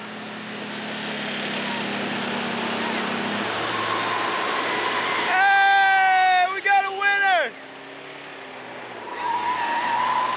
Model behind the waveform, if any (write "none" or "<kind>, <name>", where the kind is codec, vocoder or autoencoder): none